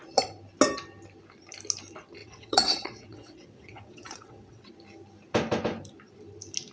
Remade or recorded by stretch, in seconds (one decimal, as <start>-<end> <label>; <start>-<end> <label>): 0.0-2.2 recorded; 2.2-4.7 remade; 4.7-6.7 recorded